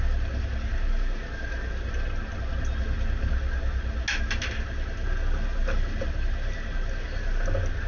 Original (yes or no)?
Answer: yes